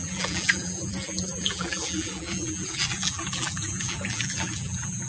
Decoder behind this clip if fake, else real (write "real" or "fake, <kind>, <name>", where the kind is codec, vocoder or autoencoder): fake, vocoder, BigVGAN v2